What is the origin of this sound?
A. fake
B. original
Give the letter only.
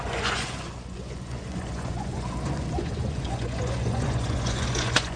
A